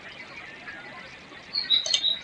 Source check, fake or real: real